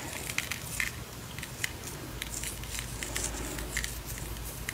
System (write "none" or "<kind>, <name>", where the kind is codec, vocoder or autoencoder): none